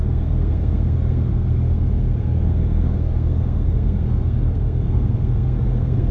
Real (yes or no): no